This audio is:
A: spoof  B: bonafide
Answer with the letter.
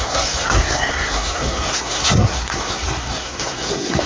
A